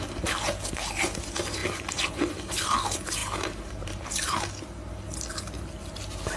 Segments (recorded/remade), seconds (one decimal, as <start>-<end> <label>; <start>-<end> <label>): 0.0-3.2 recorded; 3.2-4.3 remade; 4.3-6.4 recorded

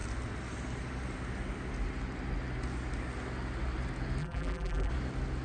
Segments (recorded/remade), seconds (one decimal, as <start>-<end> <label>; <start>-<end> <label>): 0.0-4.2 recorded; 4.2-4.9 remade; 4.9-5.4 recorded

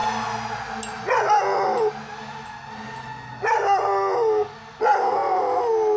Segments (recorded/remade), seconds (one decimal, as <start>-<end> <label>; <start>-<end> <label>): 0.0-6.0 recorded

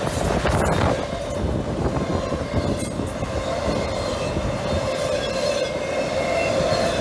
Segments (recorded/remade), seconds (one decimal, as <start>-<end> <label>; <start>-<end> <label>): 0.0-7.0 recorded

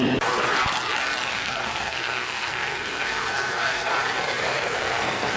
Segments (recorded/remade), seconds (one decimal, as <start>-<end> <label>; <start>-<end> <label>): 0.0-1.3 recorded; 1.3-3.9 remade; 3.9-4.4 recorded; 4.4-5.4 remade

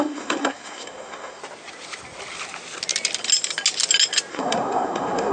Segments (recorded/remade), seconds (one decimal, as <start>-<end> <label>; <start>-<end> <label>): 0.0-1.4 remade; 1.4-4.3 recorded; 4.3-5.3 remade

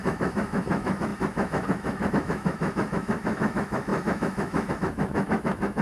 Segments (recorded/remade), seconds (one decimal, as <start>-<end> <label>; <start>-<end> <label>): 0.0-5.8 remade